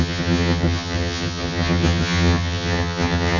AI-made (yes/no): yes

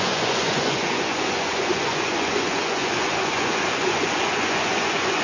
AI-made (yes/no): yes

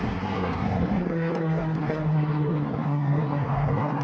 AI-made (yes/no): yes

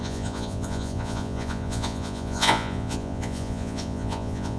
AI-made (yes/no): yes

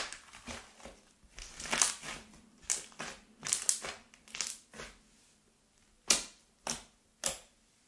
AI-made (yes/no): no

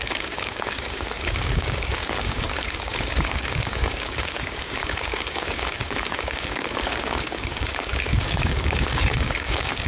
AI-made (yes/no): yes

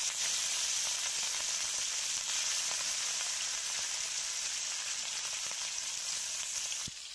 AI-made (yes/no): no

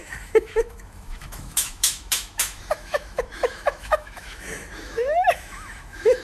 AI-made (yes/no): yes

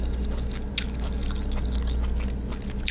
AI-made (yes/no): no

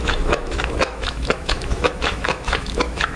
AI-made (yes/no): yes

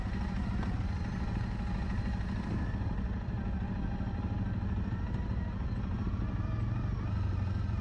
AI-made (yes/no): no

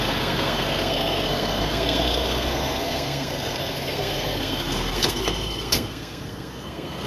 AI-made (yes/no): yes